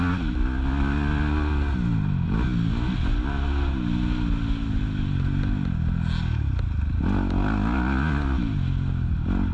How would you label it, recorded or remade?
recorded